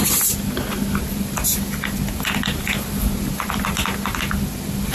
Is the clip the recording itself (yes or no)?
yes